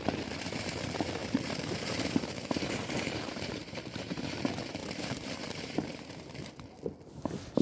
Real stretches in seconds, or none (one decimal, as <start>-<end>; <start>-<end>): 0.0-1.2; 4.2-4.8; 6.5-7.6